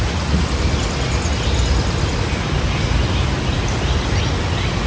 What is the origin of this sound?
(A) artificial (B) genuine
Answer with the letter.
B